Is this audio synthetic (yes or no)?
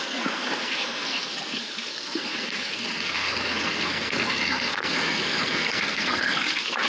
yes